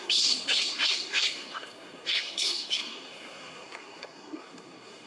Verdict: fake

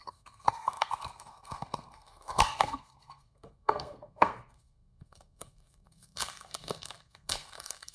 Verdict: fake